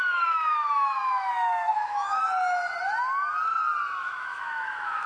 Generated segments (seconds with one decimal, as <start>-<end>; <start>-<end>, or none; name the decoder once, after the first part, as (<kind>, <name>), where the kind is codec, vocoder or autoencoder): 0.0-2.2 (autoencoder, DAC-VAE); 4.0-5.1